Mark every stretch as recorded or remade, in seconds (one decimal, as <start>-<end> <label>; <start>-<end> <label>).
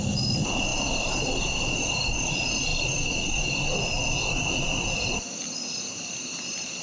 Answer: 0.0-6.8 recorded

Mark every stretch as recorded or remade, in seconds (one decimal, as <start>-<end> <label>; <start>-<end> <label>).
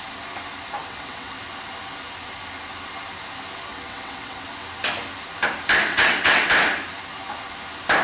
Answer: 0.0-0.8 recorded; 0.8-1.4 remade; 1.4-3.7 recorded; 3.7-4.4 remade; 4.4-5.9 recorded; 5.9-6.5 remade; 6.5-8.0 recorded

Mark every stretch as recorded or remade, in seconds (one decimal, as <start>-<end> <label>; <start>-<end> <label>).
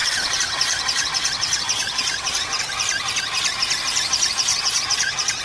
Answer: 0.0-2.6 remade; 2.6-4.5 recorded; 4.5-5.4 remade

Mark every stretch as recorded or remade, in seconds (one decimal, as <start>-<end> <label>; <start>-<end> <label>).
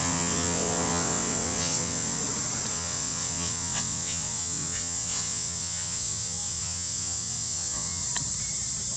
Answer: 0.0-2.2 remade; 2.2-2.7 recorded; 2.7-8.0 remade; 8.0-9.0 recorded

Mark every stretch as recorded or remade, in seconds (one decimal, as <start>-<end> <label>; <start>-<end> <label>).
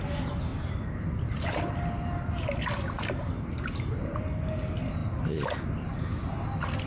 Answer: 0.0-6.9 recorded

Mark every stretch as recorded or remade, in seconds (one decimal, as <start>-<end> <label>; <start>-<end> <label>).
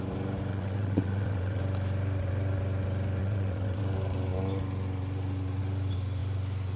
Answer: 0.0-0.5 recorded; 0.5-1.6 remade; 1.6-3.2 recorded; 3.2-3.8 remade; 3.8-6.8 recorded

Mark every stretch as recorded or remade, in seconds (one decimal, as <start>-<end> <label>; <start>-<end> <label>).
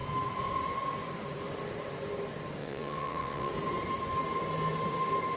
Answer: 0.0-2.6 recorded; 2.6-3.5 remade; 3.5-5.4 recorded